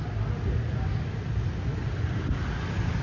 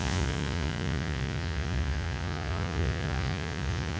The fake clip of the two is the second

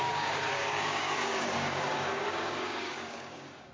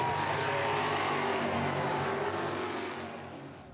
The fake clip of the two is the first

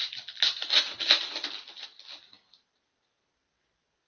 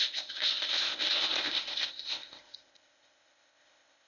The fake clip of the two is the second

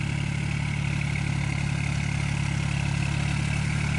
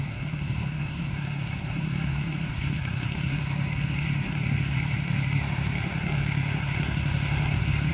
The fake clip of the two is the second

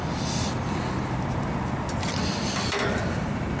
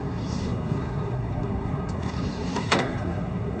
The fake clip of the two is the second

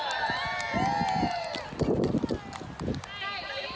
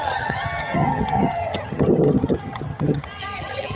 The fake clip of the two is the second